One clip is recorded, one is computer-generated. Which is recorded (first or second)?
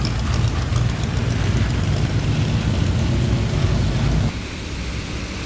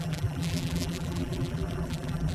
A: first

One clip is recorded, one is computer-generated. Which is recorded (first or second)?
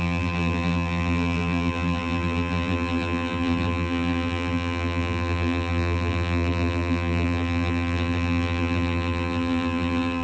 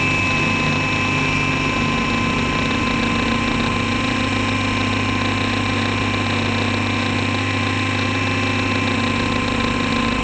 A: second